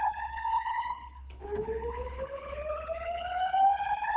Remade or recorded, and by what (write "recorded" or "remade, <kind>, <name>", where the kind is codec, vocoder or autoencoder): remade, codec, HILCodec